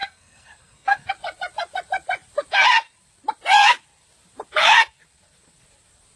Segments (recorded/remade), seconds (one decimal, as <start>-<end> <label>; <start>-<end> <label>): 0.0-1.1 remade; 1.1-6.2 recorded

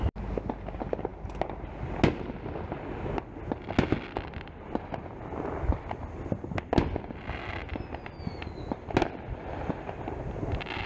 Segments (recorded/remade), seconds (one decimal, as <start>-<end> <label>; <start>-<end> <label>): 0.0-10.9 recorded